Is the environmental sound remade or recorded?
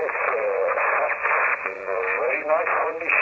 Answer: remade